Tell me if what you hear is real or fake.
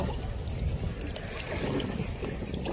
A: real